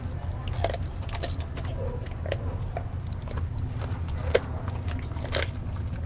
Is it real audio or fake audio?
real